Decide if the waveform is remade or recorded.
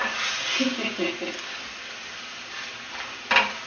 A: recorded